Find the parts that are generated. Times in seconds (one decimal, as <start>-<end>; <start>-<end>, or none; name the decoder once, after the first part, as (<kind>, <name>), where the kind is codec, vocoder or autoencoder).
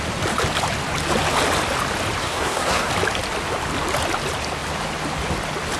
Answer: 2.2-2.9 (codec, SNAC)